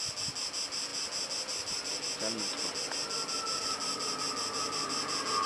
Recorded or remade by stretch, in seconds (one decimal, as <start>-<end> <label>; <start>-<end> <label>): 0.0-5.5 recorded